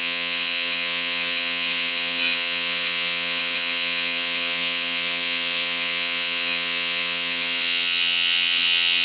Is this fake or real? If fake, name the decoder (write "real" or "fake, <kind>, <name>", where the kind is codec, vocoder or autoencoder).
fake, vocoder, WaveNeXt